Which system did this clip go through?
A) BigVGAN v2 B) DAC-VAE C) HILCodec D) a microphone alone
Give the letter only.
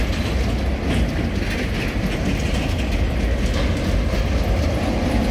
D